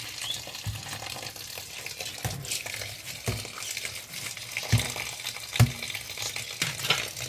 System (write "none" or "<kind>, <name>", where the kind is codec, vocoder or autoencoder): none